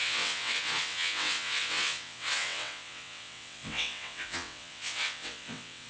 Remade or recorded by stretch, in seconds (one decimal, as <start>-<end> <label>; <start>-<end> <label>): 0.0-5.9 remade